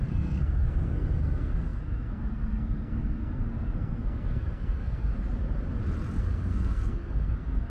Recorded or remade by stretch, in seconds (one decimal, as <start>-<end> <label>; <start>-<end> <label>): 0.0-5.1 remade; 5.1-6.2 recorded; 6.2-7.7 remade